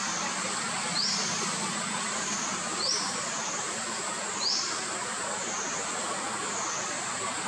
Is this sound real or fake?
real